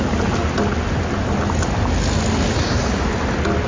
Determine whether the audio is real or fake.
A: real